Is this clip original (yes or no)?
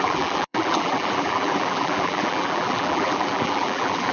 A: no